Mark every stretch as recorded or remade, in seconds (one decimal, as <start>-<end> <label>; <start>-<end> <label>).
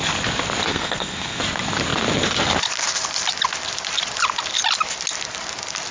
0.0-0.7 recorded; 0.7-1.4 remade; 1.4-5.9 recorded